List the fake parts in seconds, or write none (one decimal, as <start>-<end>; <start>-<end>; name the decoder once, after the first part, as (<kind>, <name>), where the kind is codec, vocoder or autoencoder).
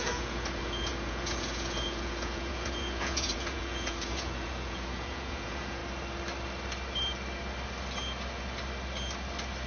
0.0-5.8 (vocoder, Vocos)